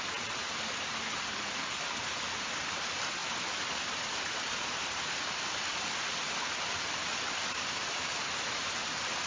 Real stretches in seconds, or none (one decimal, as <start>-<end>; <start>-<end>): 0.0-9.3